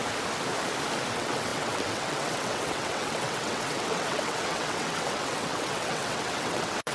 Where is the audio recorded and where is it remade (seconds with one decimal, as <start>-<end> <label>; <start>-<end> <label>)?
0.0-1.1 recorded; 1.1-6.9 remade